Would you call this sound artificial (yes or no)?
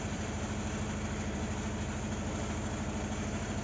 yes